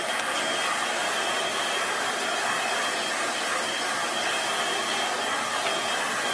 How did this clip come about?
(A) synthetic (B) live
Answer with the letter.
B